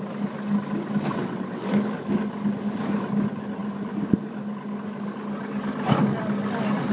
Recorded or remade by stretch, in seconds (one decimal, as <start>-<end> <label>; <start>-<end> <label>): 0.0-1.1 recorded; 1.1-1.7 remade; 1.7-6.9 recorded